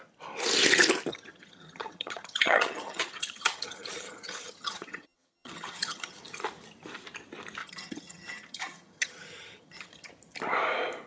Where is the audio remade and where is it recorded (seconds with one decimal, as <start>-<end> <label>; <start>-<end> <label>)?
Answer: 0.0-1.1 recorded; 1.1-6.2 remade; 6.2-7.6 recorded; 7.6-10.1 remade; 10.1-11.1 recorded